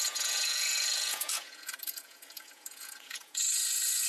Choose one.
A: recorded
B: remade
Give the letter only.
B